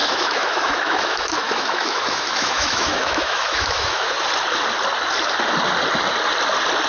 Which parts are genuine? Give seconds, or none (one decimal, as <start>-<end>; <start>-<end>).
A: 4.1-6.9